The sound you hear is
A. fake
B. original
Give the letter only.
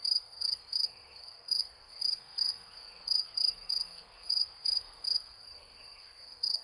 A